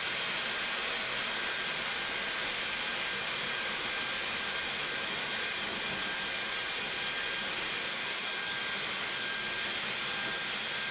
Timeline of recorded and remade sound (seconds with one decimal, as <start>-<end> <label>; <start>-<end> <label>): 0.0-10.9 recorded

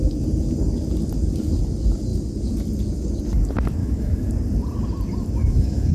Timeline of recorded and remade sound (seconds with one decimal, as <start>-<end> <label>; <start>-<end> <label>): 0.0-3.8 recorded; 3.8-4.3 remade; 4.3-5.4 recorded; 5.4-5.9 remade

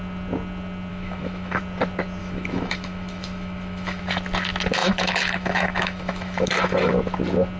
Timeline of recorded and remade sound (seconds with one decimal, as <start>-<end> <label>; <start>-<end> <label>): 0.0-0.9 recorded; 0.9-1.6 remade; 1.6-2.2 recorded; 2.2-4.0 remade; 4.0-4.8 recorded; 4.8-6.9 remade; 6.9-7.6 recorded